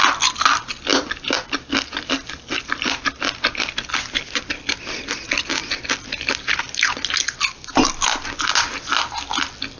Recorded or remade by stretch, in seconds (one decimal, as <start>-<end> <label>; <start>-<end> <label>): 0.0-9.8 recorded